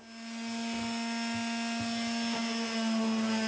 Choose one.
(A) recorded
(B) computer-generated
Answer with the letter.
A